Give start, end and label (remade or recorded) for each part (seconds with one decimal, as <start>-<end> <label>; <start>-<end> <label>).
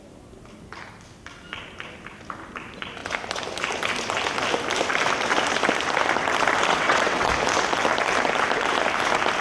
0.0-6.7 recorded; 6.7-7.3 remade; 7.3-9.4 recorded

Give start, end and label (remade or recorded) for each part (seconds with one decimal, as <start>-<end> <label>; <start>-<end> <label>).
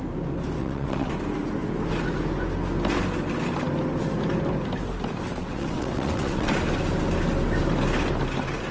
0.0-0.6 recorded; 0.6-1.1 remade; 1.1-5.4 recorded; 5.4-6.5 remade; 6.5-8.7 recorded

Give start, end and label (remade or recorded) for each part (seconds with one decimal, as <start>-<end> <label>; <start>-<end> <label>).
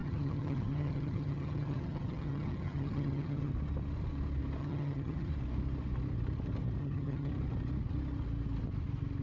0.0-3.5 remade; 3.5-4.6 recorded; 4.6-5.3 remade; 5.3-6.8 recorded; 6.8-7.3 remade; 7.3-9.2 recorded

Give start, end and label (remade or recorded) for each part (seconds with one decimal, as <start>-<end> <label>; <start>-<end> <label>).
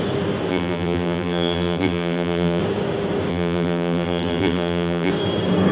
0.0-0.5 recorded; 0.5-2.6 remade; 2.6-3.3 recorded; 3.3-5.1 remade; 5.1-5.7 recorded